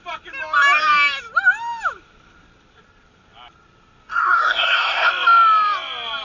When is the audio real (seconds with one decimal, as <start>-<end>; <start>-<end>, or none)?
0.0-4.1; 5.1-6.2